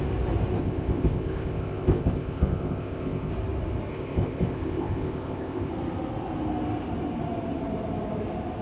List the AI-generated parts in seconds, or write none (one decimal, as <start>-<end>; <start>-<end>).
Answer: 0.6-3.3; 3.9-5.7